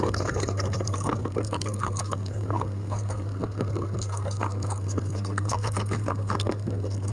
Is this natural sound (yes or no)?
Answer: no